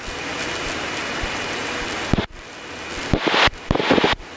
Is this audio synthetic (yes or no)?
no